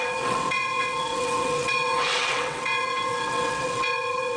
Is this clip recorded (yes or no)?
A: no